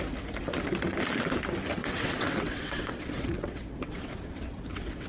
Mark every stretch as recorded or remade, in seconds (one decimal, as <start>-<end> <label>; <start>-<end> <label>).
0.0-1.8 recorded; 1.8-5.1 remade